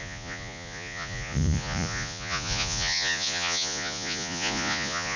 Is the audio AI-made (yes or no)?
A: yes